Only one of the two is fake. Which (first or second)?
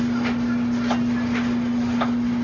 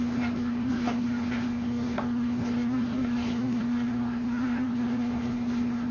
second